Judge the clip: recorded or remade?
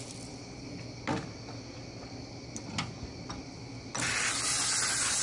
recorded